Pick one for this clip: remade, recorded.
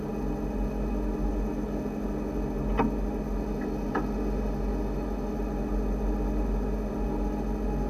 recorded